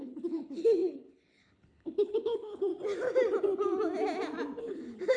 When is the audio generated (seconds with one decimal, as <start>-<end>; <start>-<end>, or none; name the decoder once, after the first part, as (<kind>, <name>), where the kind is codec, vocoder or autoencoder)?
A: 0.0-2.7 (codec, HILCodec); 4.6-5.2